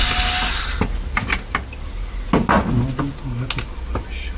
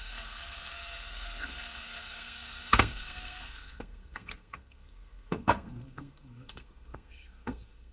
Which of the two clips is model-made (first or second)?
second